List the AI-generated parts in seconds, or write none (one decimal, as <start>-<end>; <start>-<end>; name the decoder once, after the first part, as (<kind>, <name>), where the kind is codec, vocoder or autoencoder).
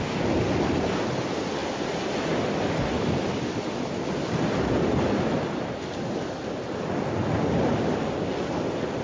none